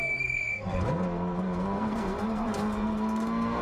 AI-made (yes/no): yes